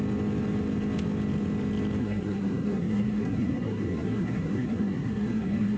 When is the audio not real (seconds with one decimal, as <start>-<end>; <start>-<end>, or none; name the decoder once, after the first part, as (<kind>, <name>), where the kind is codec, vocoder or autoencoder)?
2.0-5.8 (codec, SNAC)